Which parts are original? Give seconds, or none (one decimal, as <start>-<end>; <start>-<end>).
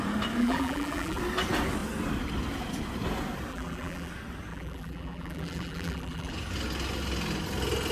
0.0-0.4; 1.2-3.5; 4.1-4.5; 6.3-7.9